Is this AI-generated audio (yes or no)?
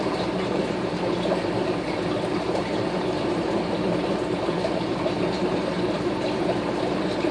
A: yes